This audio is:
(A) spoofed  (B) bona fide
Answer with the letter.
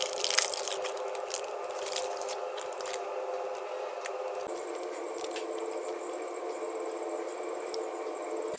B